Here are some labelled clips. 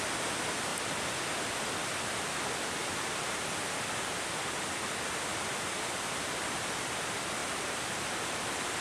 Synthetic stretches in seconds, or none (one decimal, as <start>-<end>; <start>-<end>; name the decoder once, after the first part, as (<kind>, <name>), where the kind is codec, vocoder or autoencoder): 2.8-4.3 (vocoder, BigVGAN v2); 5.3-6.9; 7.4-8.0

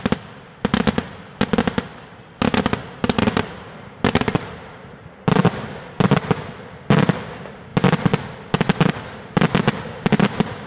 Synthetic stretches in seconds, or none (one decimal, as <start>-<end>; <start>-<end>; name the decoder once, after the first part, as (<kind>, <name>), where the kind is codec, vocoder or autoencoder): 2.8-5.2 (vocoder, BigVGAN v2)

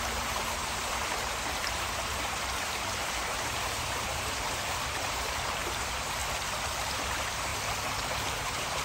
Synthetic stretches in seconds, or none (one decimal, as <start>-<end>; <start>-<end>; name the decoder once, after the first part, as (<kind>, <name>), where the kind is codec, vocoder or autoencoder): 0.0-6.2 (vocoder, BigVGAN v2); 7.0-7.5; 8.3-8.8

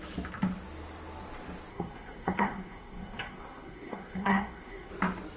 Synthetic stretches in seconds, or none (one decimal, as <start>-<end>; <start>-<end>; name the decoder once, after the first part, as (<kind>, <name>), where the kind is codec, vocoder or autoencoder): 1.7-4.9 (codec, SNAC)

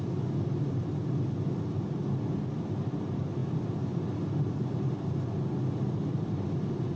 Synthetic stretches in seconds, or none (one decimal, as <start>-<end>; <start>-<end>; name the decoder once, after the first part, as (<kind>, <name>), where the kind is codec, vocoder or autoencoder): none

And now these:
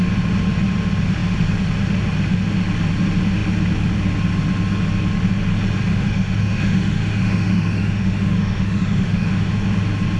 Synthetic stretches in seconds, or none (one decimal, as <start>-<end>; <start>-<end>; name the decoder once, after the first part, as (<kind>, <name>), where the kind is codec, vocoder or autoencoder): 5.9-9.5 (autoencoder, DAC-VAE)

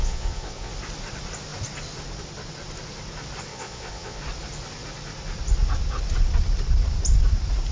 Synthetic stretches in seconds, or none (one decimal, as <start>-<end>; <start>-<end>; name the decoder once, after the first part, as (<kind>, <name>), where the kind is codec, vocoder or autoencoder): 0.0-0.7 (vocoder, Vocos); 3.5-4.2